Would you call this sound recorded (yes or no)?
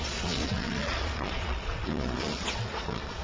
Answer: no